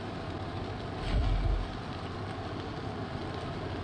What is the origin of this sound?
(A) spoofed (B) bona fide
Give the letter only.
B